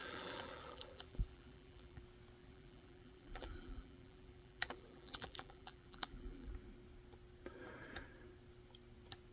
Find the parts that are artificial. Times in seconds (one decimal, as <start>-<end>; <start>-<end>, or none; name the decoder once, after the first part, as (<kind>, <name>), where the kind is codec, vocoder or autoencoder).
0.0-2.0 (vocoder, BigVGAN v2); 2.4-6.5